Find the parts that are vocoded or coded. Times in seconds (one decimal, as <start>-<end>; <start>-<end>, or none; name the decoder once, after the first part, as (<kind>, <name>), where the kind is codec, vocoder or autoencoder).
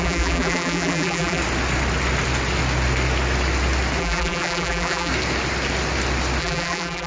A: 0.0-1.4 (vocoder, BigVGAN v2); 4.0-5.1; 6.4-7.1